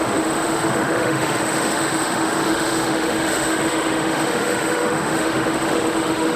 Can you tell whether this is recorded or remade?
remade